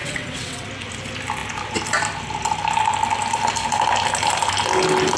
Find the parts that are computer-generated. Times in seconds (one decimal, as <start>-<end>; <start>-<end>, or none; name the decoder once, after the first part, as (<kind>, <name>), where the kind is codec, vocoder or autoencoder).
0.0-0.7 (vocoder, WaveNeXt)